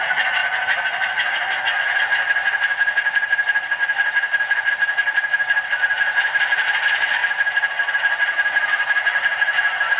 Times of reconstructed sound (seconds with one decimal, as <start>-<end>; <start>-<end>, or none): 0.0-0.4; 4.7-7.2; 7.9-10.0